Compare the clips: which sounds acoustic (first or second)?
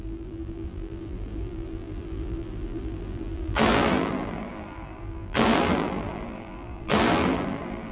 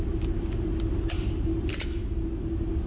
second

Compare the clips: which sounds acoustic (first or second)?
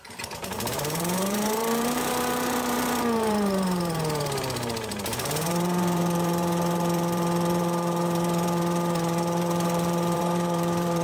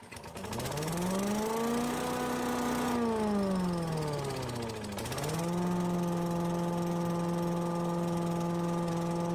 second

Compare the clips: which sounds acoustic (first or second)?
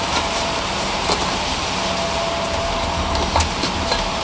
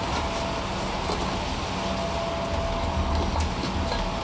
second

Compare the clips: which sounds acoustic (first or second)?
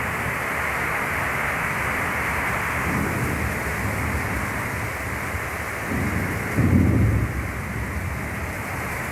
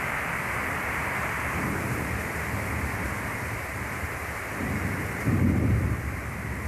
first